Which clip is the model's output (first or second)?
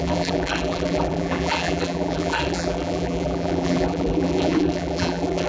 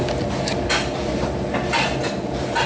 first